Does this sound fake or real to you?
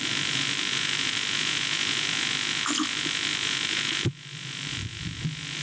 fake